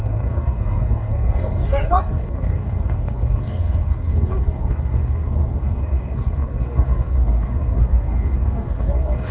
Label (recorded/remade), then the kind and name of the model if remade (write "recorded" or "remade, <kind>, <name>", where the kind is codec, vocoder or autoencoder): remade, codec, SNAC